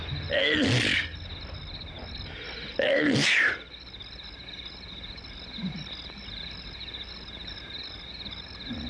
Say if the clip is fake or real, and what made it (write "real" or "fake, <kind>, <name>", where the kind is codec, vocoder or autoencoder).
real